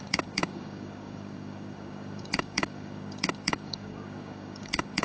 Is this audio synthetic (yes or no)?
yes